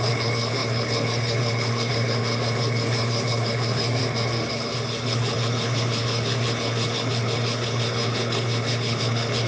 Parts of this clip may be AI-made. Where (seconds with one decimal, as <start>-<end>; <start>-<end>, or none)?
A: 0.0-4.0; 4.5-9.5